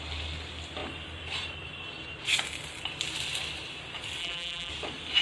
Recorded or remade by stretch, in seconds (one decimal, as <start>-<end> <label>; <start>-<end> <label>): 0.0-4.2 recorded; 4.2-4.7 remade; 4.7-5.2 recorded